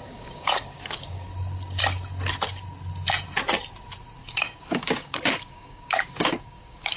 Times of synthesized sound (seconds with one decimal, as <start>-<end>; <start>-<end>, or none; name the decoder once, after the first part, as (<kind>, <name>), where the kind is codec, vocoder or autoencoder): 0.0-1.3 (codec, DAC); 4.2-7.0